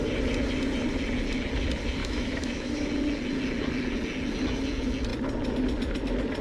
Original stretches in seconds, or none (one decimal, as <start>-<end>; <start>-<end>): 0.0-2.0; 2.9-6.4